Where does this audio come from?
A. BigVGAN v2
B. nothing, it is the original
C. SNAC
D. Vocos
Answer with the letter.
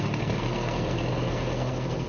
C